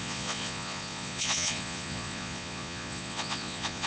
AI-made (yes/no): yes